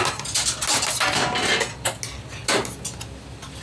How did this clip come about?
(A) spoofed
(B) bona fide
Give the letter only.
B